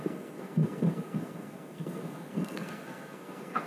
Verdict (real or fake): fake